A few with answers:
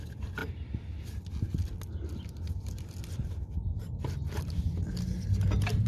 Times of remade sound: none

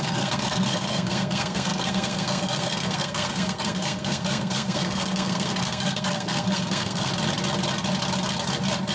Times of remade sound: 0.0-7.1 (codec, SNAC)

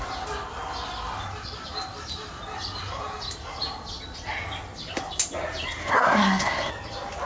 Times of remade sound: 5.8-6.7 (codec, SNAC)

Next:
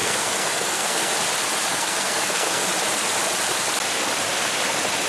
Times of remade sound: 0.0-1.1 (codec, SNAC); 1.7-2.7